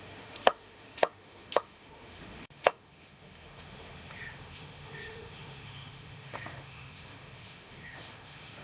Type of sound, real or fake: fake